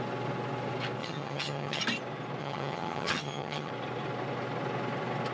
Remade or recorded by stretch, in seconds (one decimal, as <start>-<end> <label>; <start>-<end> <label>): 0.0-1.0 recorded; 1.0-1.8 remade; 1.8-2.4 recorded; 2.4-3.7 remade; 3.7-5.3 recorded